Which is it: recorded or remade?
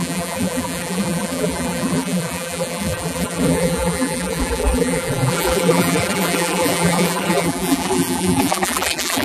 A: remade